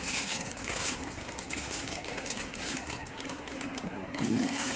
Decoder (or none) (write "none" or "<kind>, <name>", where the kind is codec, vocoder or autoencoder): codec, SNAC